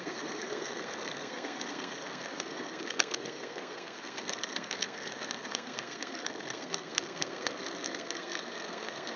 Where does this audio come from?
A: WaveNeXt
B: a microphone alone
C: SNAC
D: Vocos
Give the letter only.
C